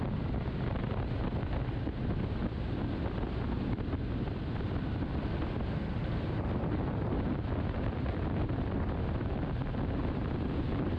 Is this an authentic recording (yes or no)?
yes